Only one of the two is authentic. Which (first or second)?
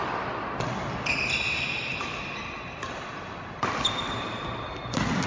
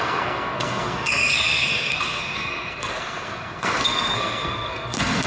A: first